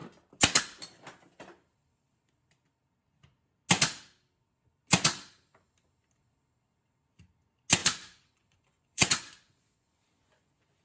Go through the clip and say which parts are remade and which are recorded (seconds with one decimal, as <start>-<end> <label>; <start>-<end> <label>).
0.0-7.8 recorded; 7.8-10.8 remade